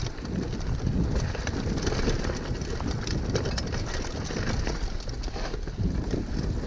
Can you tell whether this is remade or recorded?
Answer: recorded